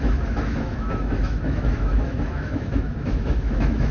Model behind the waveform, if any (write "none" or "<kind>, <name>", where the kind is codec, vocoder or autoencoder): autoencoder, DAC-VAE